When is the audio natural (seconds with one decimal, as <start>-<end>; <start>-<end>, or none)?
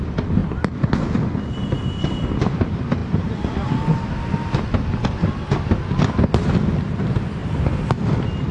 0.0-8.5